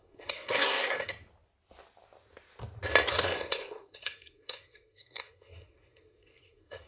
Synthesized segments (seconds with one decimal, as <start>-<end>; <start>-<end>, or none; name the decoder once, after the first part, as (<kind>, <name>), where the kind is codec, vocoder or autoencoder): 0.0-1.1 (codec, SNAC); 3.1-6.9